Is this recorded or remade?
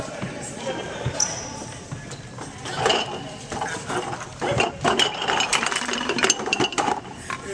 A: remade